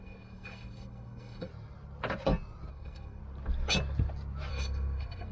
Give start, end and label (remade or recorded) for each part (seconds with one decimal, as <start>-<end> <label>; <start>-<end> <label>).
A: 0.0-1.5 remade; 1.5-2.7 recorded; 2.7-3.2 remade; 3.2-4.5 recorded; 4.5-5.3 remade